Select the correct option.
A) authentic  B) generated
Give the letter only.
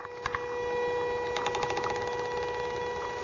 A